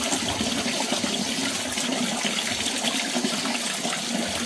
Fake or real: real